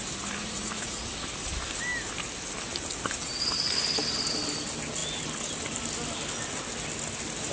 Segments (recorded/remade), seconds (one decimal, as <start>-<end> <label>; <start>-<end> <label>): 0.0-0.4 recorded; 0.4-1.1 remade; 1.1-7.5 recorded